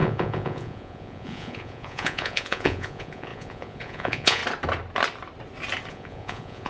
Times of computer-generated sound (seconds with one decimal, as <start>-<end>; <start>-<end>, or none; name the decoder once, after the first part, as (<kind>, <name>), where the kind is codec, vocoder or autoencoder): 0.0-4.4 (vocoder, Vocos); 5.9-6.7